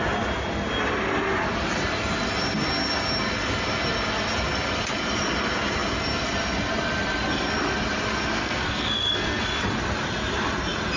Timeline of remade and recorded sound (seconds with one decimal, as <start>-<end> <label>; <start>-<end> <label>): 0.0-8.4 recorded; 8.4-9.4 remade; 9.4-11.0 recorded